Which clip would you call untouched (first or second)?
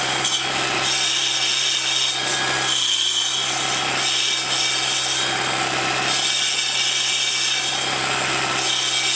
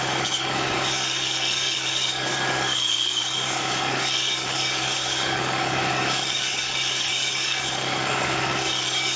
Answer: first